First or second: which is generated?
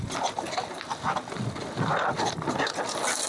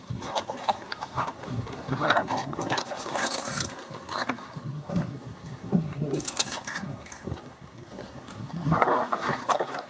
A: second